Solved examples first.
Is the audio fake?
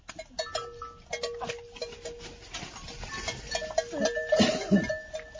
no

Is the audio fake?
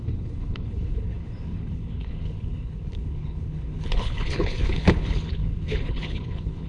yes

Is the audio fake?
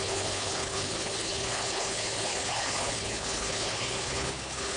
yes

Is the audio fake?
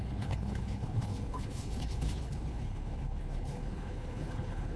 yes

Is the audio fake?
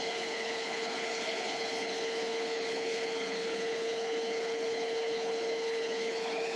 yes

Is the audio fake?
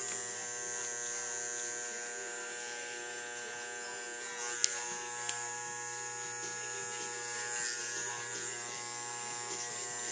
no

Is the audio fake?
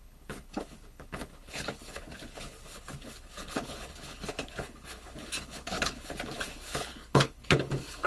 yes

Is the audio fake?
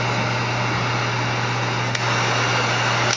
no